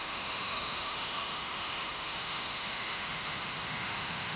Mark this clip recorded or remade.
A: remade